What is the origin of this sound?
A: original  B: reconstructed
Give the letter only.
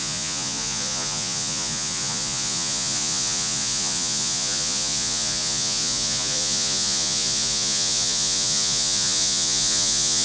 B